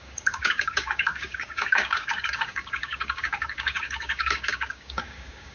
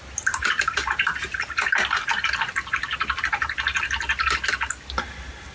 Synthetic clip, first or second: first